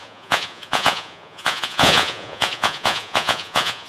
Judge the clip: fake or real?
fake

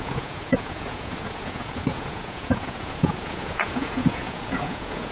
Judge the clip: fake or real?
fake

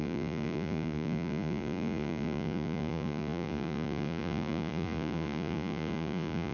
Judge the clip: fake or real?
fake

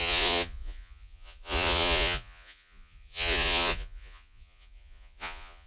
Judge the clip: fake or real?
fake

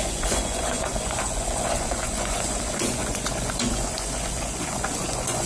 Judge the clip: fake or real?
fake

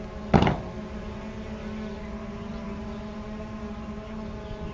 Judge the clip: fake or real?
real